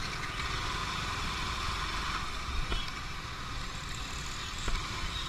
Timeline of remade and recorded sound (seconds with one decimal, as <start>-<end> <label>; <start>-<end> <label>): 0.0-0.8 recorded; 0.8-1.7 remade; 1.7-4.4 recorded; 4.4-5.3 remade